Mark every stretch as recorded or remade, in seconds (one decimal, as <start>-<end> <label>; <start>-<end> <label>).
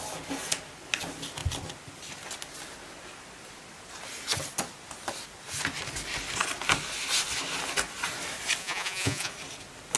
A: 0.0-8.6 recorded; 8.6-9.3 remade; 9.3-10.0 recorded